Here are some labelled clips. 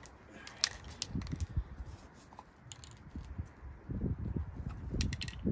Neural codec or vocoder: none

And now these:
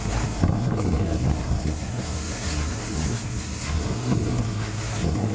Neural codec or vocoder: codec, SNAC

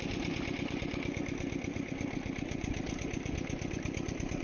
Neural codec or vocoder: none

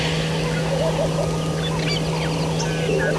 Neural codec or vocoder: none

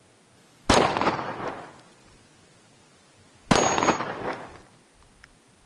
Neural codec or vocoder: none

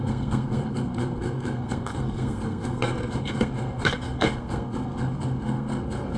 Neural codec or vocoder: codec, SNAC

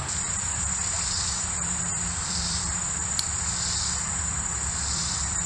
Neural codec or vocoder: vocoder, BigVGAN v2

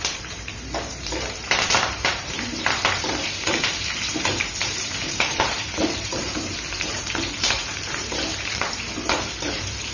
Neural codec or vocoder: vocoder, BigVGAN v2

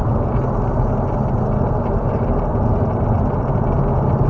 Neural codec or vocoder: none